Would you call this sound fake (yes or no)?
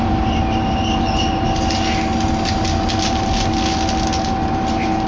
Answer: no